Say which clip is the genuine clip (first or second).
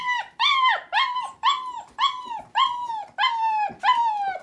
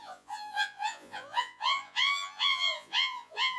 first